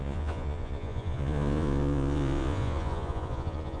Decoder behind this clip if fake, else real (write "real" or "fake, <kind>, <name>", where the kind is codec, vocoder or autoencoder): fake, vocoder, Vocos